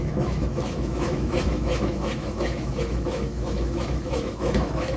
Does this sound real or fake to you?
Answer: fake